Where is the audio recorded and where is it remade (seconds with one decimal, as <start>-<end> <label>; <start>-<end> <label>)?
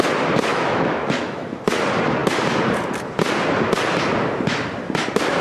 0.0-0.5 recorded; 0.5-1.6 remade; 1.6-5.4 recorded